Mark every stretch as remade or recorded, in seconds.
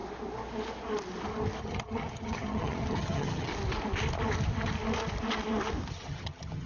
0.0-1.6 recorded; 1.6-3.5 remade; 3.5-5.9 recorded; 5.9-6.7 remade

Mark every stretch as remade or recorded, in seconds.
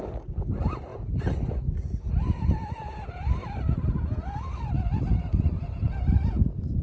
0.0-6.8 recorded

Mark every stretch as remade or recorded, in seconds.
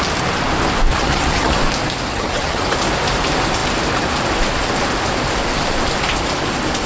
0.0-0.9 recorded; 0.9-1.6 remade; 1.6-2.1 recorded; 2.1-2.6 remade; 2.6-6.9 recorded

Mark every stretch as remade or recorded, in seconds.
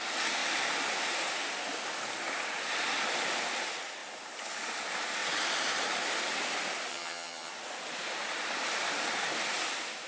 0.0-6.9 recorded; 6.9-7.5 remade; 7.5-10.1 recorded